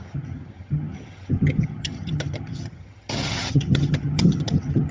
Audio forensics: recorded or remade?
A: remade